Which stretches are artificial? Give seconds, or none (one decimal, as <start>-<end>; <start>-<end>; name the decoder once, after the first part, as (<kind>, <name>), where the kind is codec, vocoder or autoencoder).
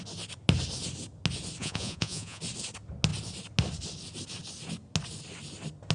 1.6-2.4 (vocoder, Vocos)